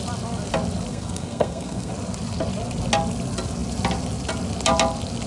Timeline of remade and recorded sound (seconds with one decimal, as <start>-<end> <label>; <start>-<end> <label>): 0.0-0.9 recorded; 0.9-1.9 remade; 1.9-5.3 recorded